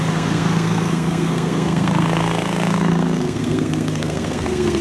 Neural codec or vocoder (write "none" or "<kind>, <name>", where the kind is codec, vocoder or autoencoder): codec, SNAC